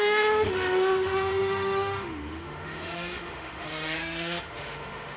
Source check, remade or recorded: remade